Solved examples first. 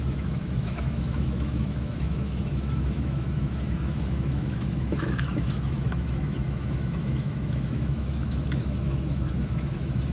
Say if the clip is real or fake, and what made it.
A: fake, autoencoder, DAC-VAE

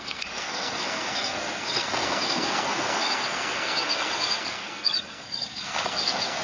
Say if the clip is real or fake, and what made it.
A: fake, codec, SNAC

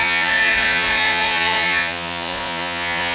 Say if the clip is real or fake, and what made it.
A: fake, vocoder, Vocos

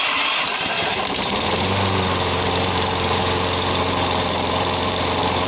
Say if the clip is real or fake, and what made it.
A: fake, vocoder, BigVGAN v2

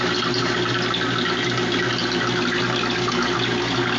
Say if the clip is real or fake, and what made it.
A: real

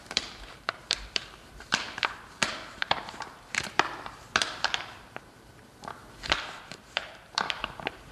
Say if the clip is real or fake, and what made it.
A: fake, vocoder, BigVGAN v2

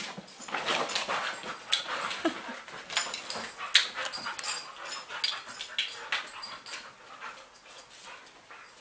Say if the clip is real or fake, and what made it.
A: real